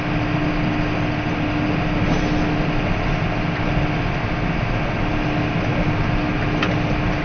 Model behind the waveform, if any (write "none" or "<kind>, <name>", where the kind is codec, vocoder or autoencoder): none